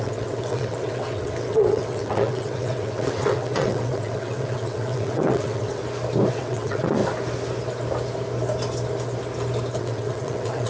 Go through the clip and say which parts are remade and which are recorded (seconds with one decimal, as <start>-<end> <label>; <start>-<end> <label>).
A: 0.0-5.8 remade; 5.8-6.3 recorded; 6.3-7.0 remade; 7.0-9.8 recorded; 9.8-10.7 remade